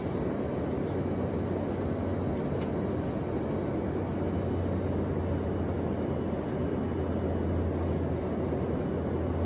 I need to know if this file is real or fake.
real